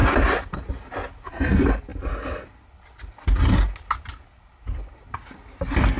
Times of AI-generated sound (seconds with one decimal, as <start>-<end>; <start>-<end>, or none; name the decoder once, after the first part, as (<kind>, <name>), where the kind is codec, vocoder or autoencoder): none